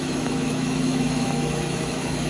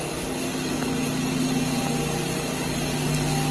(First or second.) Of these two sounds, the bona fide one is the second